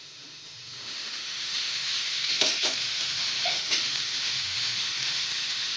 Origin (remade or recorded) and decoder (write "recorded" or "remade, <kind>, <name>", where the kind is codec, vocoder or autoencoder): remade, autoencoder, DAC-VAE